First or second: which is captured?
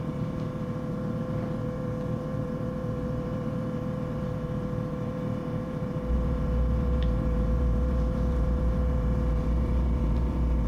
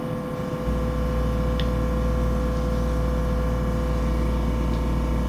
second